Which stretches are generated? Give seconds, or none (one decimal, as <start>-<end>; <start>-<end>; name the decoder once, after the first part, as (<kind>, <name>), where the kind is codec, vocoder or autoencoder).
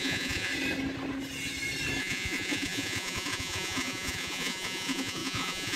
0.0-0.5 (vocoder, Vocos); 2.0-5.8